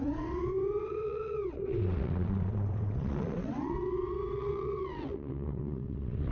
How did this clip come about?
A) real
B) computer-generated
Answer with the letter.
B